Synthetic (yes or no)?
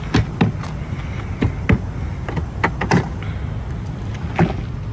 no